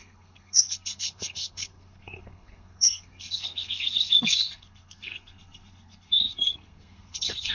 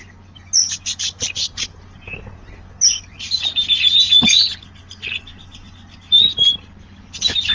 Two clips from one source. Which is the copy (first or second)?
first